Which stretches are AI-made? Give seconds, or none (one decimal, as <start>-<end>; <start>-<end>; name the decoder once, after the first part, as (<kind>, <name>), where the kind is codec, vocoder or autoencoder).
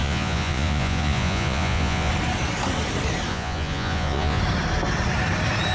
0.0-2.1 (vocoder, Vocos); 3.3-4.4